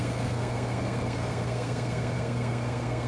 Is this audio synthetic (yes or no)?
yes